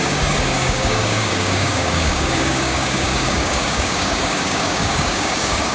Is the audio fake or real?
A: fake